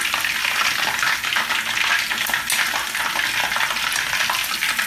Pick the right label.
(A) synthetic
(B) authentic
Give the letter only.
B